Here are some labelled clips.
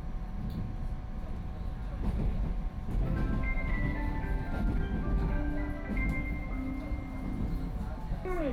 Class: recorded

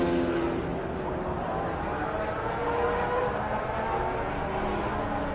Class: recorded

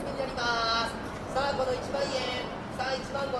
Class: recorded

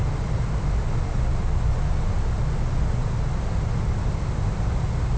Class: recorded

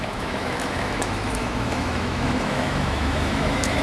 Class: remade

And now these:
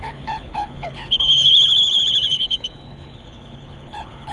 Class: remade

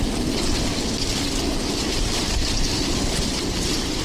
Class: recorded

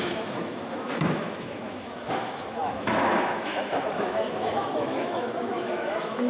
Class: remade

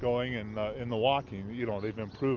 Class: recorded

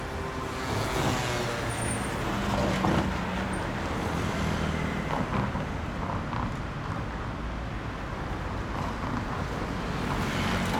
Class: recorded